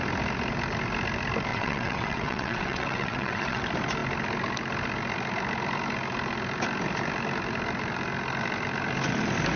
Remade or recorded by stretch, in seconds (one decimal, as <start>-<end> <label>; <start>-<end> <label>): 0.0-1.5 recorded; 1.5-3.6 remade; 3.6-9.6 recorded